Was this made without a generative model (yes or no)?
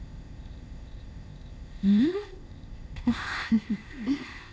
no